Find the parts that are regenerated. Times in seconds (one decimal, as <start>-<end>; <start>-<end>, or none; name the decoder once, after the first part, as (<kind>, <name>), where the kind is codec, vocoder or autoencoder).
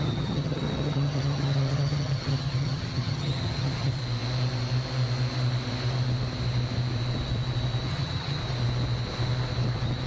0.0-4.0 (vocoder, HiFi-GAN); 7.9-8.4